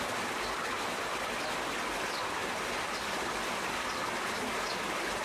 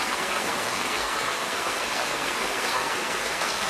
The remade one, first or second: second